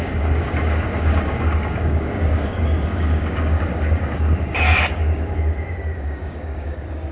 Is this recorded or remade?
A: remade